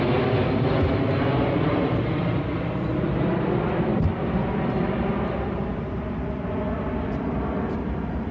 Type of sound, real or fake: real